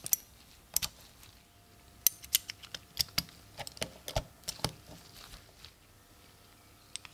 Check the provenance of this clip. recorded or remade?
recorded